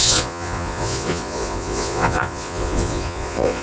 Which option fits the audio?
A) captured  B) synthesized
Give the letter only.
B